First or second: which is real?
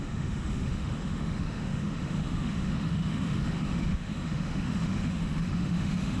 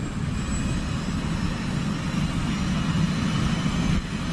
second